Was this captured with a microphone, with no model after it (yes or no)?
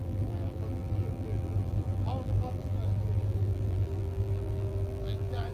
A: no